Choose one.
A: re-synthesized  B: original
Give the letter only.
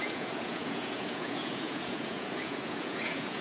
A